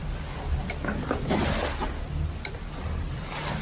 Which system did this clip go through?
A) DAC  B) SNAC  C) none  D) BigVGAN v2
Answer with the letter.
C